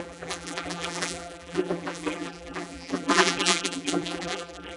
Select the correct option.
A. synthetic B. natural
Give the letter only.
A